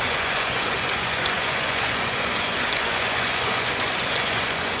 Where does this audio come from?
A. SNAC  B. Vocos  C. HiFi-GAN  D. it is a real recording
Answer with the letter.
B